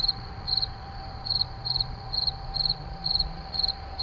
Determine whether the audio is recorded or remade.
remade